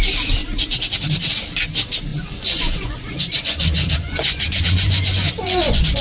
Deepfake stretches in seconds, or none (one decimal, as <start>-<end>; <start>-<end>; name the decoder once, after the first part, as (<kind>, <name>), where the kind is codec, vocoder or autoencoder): 2.1-6.0 (vocoder, Vocos)